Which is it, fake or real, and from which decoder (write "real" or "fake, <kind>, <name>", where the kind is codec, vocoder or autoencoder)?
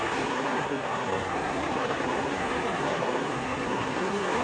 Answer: fake, codec, SNAC